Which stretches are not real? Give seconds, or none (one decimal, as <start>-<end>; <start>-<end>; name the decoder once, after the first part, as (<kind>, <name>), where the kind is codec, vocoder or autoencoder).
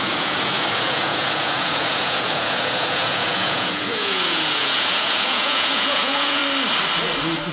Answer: 0.0-6.4 (vocoder, Vocos)